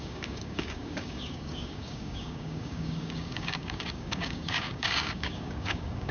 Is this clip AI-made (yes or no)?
yes